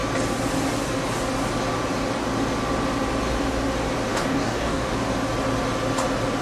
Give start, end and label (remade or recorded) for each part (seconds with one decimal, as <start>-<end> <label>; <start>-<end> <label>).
0.0-4.1 recorded; 4.1-4.9 remade; 4.9-6.4 recorded